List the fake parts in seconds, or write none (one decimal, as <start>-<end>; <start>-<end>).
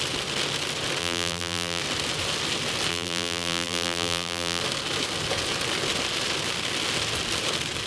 1.0-1.8; 2.9-4.6